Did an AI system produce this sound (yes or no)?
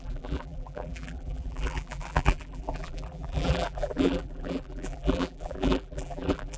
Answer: yes